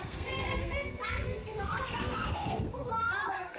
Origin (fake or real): fake